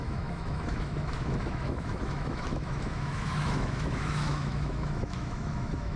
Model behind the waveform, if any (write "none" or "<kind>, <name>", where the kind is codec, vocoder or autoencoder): autoencoder, DAC-VAE